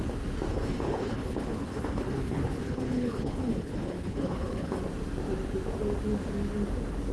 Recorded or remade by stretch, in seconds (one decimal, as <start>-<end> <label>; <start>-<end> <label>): 0.0-0.5 recorded; 0.5-4.8 remade; 4.8-7.1 recorded